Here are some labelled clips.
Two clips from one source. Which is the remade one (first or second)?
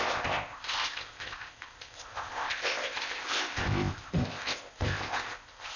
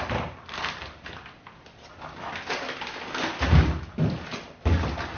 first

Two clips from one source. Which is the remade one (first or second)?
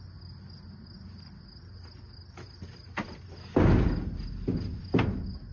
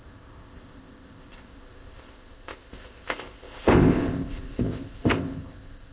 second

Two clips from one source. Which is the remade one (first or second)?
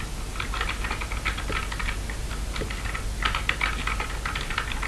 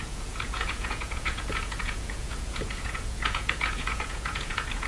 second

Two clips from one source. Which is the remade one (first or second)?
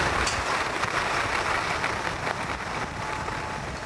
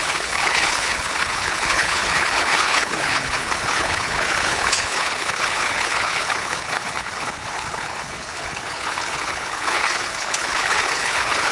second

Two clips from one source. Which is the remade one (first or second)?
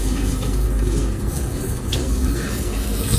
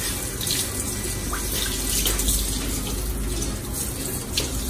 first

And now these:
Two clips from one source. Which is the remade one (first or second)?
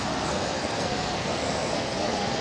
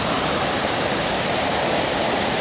first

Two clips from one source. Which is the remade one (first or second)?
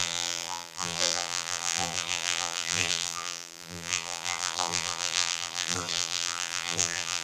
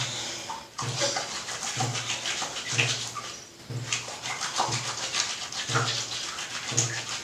first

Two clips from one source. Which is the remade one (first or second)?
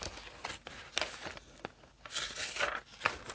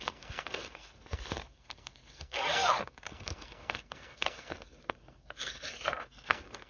second